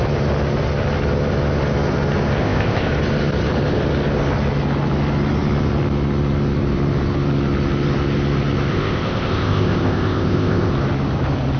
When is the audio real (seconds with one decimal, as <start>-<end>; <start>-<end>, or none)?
0.0-2.4; 2.9-8.7; 10.7-11.6